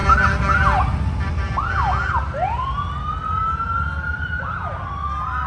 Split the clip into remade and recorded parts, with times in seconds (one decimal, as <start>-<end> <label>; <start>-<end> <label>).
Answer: 0.0-5.5 recorded